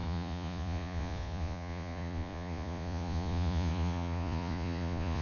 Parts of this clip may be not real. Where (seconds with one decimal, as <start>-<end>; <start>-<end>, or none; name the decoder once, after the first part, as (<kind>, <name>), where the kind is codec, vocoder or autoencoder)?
0.0-5.2 (vocoder, Vocos)